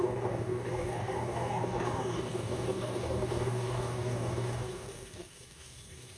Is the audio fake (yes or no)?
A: yes